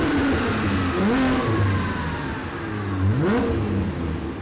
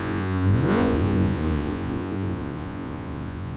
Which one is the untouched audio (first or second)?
first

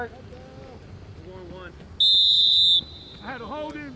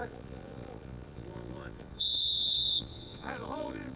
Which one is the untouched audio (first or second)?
first